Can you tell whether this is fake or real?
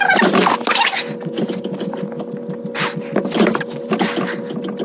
real